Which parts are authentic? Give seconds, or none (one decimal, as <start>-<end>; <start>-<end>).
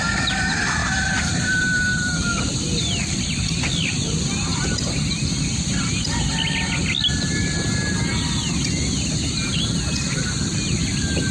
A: 0.0-0.8; 2.2-11.3